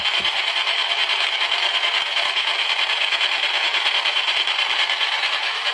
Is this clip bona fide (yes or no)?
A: no